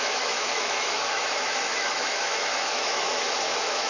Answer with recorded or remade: remade